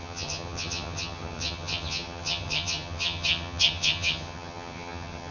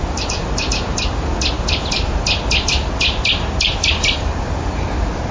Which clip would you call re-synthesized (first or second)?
first